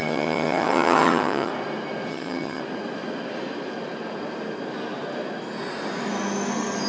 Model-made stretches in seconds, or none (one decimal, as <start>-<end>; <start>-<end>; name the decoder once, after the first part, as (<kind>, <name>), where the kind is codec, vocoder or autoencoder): 0.0-1.5 (vocoder, HiFi-GAN); 2.1-2.6